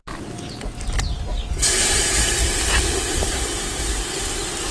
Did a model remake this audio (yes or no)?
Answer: no